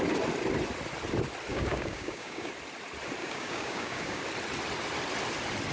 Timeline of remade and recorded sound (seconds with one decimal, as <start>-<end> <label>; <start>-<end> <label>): 0.0-1.5 recorded; 1.5-2.5 remade; 2.5-3.2 recorded; 3.2-4.2 remade; 4.2-5.7 recorded